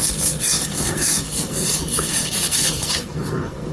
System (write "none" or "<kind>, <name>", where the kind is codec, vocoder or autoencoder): codec, SNAC